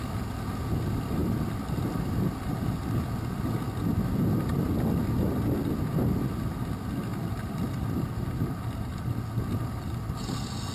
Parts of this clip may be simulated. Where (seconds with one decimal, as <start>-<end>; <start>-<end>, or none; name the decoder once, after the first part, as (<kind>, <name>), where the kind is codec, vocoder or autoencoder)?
1.2-1.8 (vocoder, BigVGAN v2); 7.1-9.2